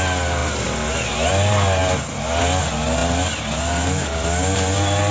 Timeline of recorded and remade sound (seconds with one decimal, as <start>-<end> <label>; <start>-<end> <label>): 0.0-5.1 recorded